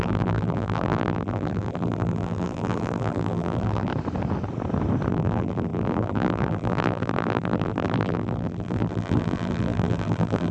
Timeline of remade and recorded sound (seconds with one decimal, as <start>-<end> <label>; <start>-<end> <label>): 0.0-3.9 remade; 3.9-5.1 recorded; 5.1-10.5 remade